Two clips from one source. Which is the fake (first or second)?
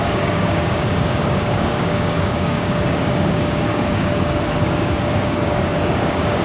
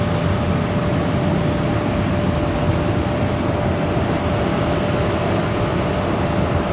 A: first